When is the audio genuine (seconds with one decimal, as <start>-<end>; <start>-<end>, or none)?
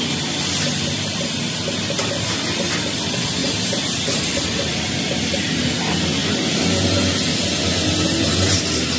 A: 0.0-9.0